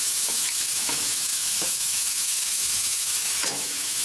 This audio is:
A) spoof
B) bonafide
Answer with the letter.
A